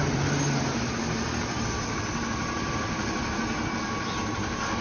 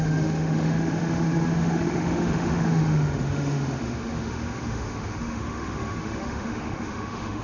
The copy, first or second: second